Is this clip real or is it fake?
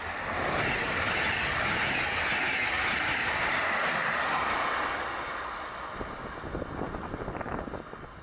real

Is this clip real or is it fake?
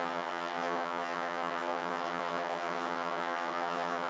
fake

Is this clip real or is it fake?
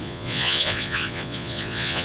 fake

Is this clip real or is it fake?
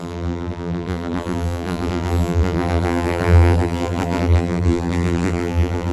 fake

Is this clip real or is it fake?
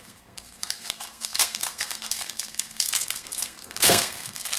fake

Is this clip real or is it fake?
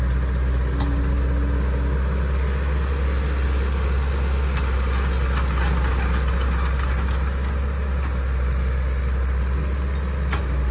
real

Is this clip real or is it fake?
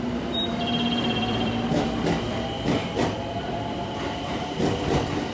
fake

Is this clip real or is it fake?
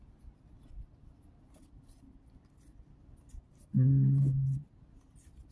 real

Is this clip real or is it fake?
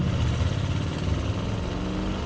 real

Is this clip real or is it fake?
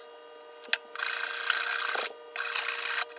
real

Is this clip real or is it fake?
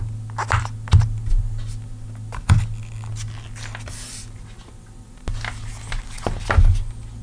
real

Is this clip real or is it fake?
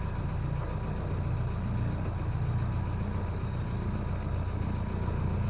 real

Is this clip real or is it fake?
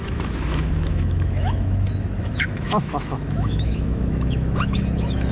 fake